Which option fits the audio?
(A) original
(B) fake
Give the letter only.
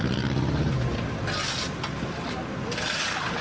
A